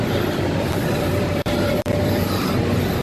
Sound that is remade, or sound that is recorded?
remade